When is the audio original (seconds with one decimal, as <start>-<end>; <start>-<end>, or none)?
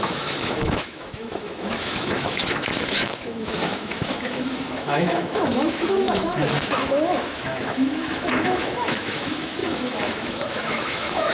none